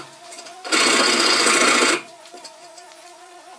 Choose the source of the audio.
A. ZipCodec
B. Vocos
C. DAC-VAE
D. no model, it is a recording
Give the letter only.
B